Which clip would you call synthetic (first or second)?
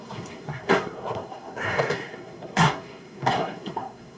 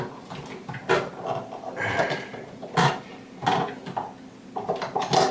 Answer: first